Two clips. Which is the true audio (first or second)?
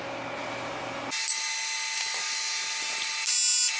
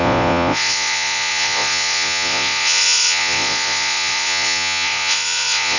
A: first